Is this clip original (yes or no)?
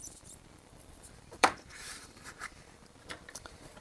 no